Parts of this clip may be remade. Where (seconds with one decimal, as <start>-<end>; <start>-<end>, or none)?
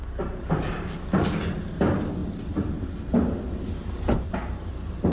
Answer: none